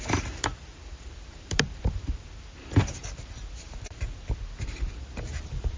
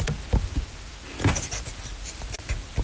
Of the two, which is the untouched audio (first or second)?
second